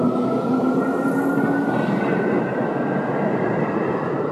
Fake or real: real